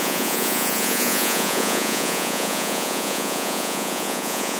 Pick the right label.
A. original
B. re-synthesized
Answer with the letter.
B